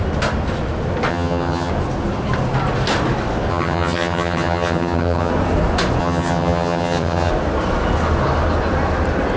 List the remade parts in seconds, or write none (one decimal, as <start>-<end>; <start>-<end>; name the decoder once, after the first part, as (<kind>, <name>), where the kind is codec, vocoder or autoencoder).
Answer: 1.1-1.7 (vocoder, HiFi-GAN); 3.5-5.3; 6.0-7.3